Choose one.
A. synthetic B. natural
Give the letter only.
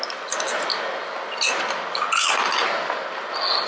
B